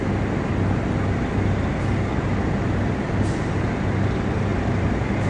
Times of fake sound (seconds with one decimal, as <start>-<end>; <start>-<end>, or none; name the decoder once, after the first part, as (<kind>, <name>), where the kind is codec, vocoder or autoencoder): 4.5-5.3 (vocoder, BigVGAN v2)

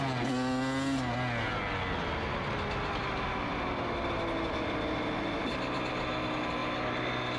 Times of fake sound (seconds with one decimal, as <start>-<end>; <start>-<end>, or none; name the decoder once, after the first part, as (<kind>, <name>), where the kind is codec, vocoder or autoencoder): none

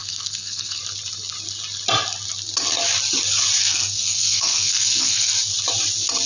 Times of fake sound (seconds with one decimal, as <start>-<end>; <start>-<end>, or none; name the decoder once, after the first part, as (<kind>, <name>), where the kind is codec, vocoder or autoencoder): 0.0-0.8 (codec, SNAC); 3.6-5.3

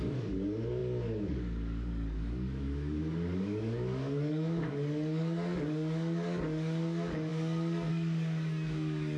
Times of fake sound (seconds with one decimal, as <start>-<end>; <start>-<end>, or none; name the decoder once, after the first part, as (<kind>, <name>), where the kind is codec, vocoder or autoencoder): 0.0-9.2 (codec, DAC)

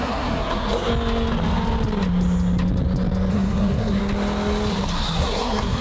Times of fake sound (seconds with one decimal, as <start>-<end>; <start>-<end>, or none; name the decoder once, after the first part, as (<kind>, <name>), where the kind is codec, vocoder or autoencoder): 0.0-0.9 (codec, SNAC); 3.3-4.0; 4.9-5.8

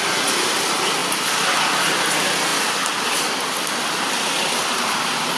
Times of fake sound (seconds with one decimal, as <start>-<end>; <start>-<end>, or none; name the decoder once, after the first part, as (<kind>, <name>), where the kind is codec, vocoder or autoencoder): none